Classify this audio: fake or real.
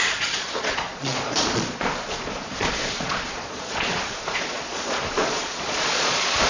fake